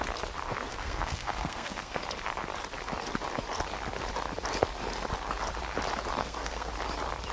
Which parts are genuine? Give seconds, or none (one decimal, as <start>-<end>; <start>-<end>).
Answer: 0.0-0.7; 2.0-6.2; 6.7-7.3

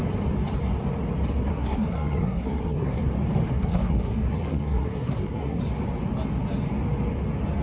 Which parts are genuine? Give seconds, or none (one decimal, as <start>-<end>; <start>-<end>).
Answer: 0.0-1.5; 3.1-3.5; 5.6-7.6

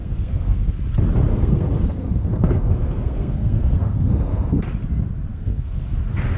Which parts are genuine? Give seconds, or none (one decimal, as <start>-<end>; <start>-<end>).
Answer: 0.7-1.3; 4.6-5.3; 5.9-6.4

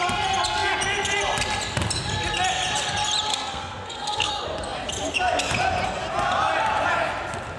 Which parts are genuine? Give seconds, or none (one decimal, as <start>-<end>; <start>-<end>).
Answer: 0.0-3.3; 4.3-7.6

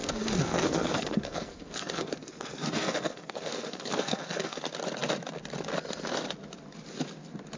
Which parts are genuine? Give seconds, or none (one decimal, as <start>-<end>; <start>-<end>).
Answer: 4.6-7.6

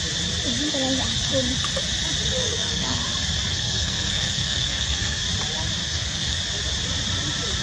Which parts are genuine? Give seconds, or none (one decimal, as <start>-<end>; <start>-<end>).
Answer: 0.0-2.4; 3.0-3.5; 5.2-5.8; 6.4-7.6

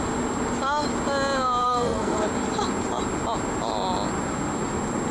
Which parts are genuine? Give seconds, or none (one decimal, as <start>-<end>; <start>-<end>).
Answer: 0.0-1.6; 2.3-5.1

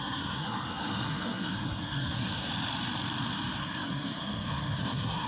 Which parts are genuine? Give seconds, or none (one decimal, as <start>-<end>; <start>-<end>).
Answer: 2.5-3.6